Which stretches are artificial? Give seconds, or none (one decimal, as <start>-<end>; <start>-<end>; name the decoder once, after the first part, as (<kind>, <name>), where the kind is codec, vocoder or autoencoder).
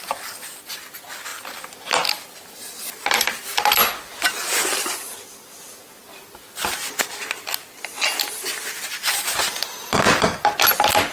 none